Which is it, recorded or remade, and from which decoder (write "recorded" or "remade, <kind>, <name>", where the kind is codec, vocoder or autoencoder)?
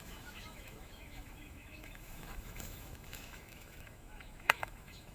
remade, autoencoder, DAC-VAE